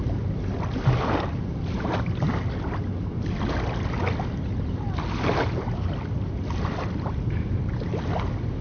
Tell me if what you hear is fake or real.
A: real